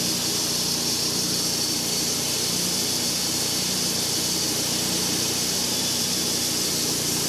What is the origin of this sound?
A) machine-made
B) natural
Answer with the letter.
A